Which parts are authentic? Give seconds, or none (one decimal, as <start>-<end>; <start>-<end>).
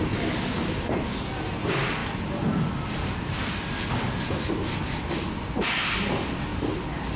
0.0-7.2